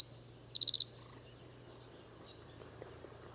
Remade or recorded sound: recorded